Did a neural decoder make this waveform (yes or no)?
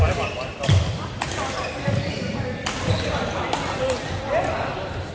no